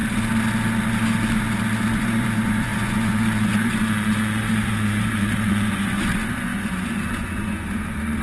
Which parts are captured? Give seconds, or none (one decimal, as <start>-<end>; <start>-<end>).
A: 0.0-2.0